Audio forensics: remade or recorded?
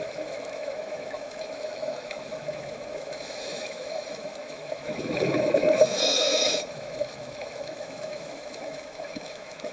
remade